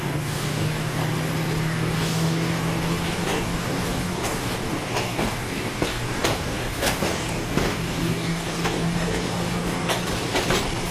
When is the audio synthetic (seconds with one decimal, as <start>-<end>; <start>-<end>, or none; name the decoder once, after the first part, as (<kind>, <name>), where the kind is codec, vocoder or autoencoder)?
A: 0.0-1.0 (codec, DAC); 1.6-10.0